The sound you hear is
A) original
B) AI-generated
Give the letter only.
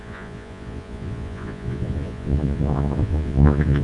B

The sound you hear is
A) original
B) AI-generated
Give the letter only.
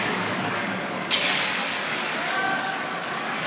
B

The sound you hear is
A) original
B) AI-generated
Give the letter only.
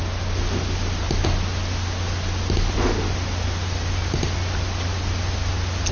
A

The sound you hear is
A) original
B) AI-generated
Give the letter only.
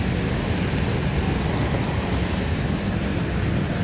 A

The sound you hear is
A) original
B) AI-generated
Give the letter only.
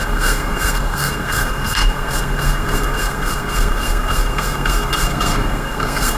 B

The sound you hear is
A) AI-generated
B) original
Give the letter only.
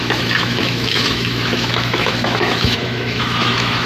A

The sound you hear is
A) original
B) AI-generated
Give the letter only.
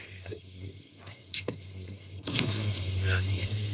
B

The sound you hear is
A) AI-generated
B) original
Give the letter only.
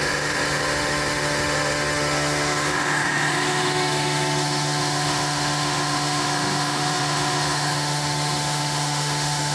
A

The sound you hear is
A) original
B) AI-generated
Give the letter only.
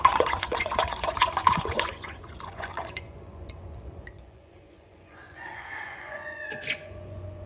B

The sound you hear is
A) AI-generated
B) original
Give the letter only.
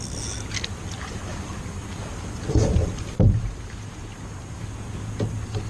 B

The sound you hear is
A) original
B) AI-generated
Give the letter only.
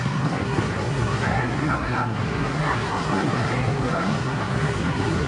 B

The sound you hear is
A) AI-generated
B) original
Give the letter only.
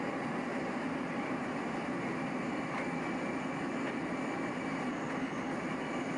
B